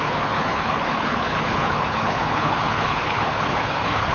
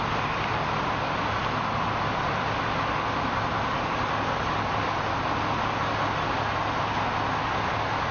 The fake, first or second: first